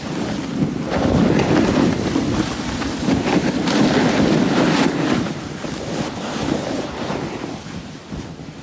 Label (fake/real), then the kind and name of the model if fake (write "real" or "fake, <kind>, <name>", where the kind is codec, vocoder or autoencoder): real